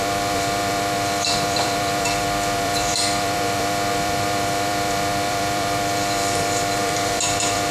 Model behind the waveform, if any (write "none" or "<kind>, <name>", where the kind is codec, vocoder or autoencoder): vocoder, BigVGAN v2